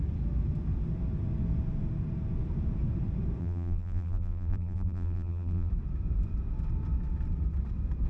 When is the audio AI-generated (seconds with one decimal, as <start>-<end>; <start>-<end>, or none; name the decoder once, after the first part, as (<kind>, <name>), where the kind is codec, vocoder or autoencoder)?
3.4-5.7 (vocoder, BigVGAN v2)